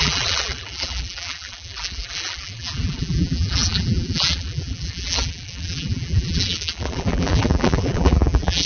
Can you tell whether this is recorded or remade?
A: remade